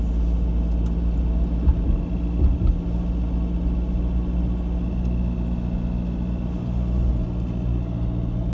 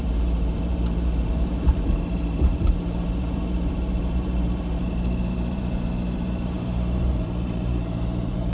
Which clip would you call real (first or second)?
first